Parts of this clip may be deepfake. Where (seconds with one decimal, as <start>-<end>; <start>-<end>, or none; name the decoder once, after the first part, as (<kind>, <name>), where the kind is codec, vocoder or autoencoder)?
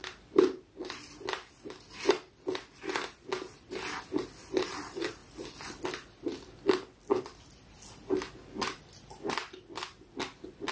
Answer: none